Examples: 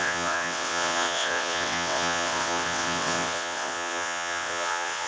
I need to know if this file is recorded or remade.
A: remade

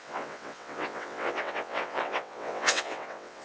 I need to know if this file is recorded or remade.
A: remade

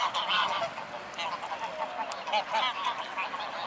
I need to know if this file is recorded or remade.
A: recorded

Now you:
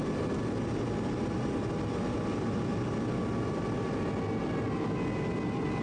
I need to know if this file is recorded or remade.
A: recorded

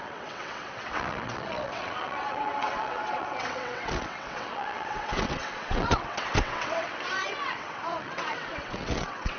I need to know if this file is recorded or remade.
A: remade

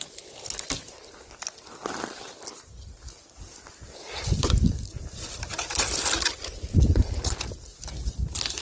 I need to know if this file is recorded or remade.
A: recorded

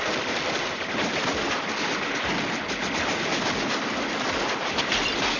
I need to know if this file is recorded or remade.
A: recorded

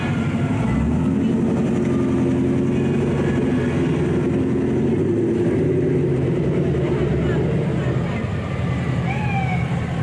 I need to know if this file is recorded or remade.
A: recorded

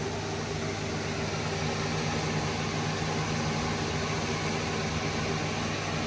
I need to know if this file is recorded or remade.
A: recorded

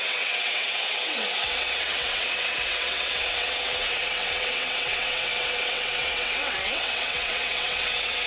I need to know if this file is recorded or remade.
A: remade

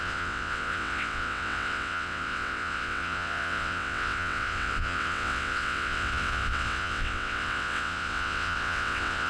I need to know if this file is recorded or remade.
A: remade